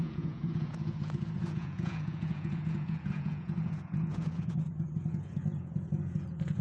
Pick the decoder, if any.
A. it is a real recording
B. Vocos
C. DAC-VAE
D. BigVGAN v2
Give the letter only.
B